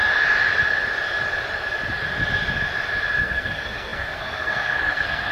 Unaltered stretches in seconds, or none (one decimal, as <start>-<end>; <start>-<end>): 0.0-3.2